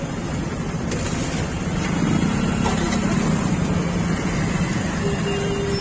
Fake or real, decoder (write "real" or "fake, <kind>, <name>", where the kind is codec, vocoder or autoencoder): real